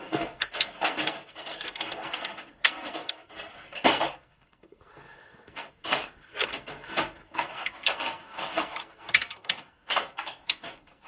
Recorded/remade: remade